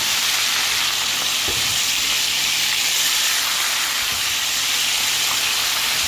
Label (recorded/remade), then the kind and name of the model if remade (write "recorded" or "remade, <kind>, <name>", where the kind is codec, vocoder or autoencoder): recorded